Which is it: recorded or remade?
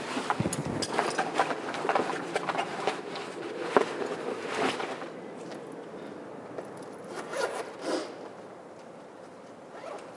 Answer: recorded